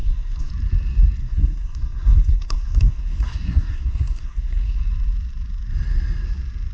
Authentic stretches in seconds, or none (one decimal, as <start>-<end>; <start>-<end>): 0.5-1.2; 4.8-6.7